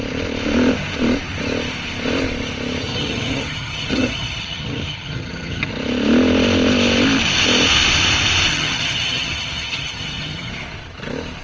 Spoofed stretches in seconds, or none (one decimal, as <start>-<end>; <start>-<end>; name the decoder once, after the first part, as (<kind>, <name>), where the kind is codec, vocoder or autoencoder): 2.8-5.7 (vocoder, HiFi-GAN); 8.5-10.5